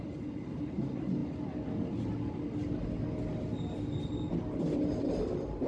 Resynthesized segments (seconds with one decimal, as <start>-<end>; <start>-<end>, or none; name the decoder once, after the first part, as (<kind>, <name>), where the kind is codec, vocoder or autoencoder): none